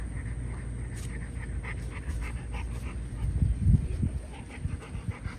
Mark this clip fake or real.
real